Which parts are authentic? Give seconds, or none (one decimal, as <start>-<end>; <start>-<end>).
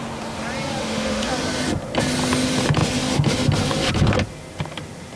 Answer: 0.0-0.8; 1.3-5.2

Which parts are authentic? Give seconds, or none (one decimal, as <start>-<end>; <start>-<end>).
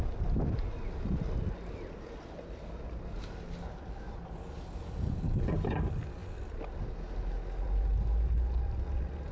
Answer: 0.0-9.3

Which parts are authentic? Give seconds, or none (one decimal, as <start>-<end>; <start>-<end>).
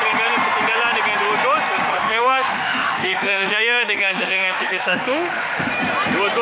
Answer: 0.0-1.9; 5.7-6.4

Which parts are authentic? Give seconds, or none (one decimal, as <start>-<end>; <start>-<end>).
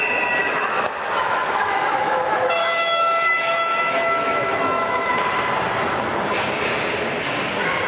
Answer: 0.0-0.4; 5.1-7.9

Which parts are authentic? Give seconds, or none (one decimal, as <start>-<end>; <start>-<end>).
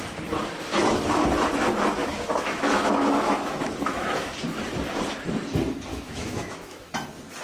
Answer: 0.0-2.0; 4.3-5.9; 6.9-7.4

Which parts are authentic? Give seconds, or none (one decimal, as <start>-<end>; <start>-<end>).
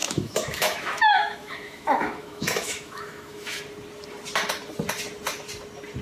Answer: 3.6-6.0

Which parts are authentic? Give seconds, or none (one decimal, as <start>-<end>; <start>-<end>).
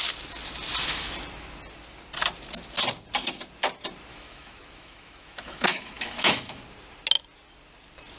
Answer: 0.0-4.1; 6.6-8.2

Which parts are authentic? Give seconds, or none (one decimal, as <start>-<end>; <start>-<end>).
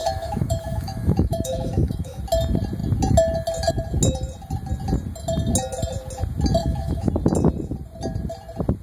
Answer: 2.2-6.6; 7.1-8.8